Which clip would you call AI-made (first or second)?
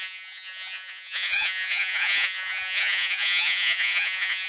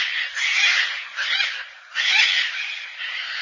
first